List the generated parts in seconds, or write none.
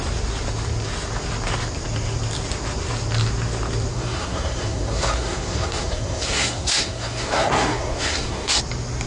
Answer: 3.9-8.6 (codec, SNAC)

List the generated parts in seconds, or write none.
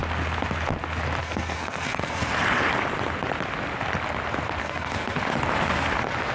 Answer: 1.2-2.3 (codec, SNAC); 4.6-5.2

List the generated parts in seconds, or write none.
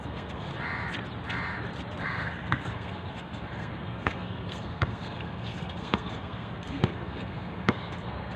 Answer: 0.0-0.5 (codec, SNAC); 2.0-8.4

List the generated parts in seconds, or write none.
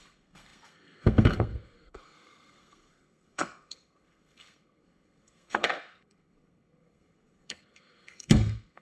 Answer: 0.0-8.8 (codec, SNAC)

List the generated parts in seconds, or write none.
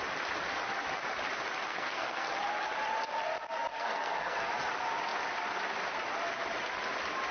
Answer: 1.7-2.3 (codec, SNAC); 3.7-4.5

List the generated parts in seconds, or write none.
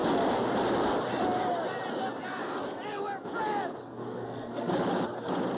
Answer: 3.8-4.7 (codec, SNAC)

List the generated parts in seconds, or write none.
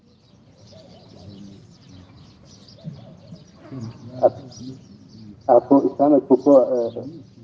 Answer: none